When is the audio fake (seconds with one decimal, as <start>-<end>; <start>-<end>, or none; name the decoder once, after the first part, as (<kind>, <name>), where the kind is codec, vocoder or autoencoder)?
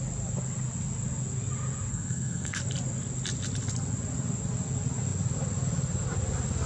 1.9-2.6 (codec, SNAC)